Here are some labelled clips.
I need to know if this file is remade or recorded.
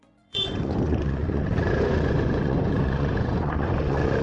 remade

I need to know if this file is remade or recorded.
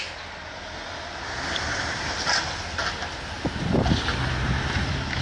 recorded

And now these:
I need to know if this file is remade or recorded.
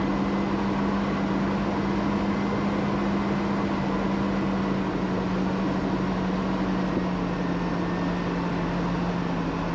recorded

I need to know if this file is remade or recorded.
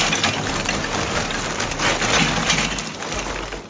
recorded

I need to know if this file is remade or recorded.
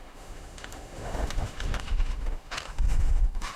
remade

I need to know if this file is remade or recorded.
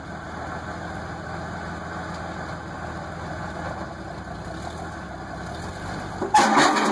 recorded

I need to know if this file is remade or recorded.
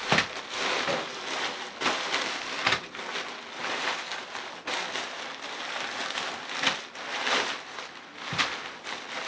recorded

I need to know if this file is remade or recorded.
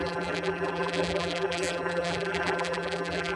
remade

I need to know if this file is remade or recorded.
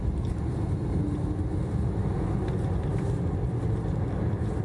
recorded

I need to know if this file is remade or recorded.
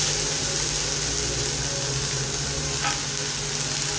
recorded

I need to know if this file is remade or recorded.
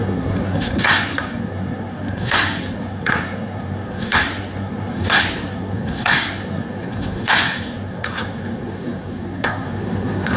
remade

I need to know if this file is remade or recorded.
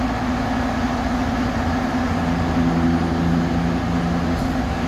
recorded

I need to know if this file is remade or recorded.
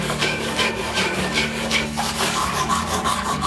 remade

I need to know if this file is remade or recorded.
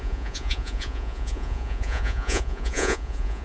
remade